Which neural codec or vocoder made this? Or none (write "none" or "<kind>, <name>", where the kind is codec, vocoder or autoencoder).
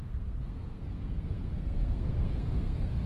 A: codec, SNAC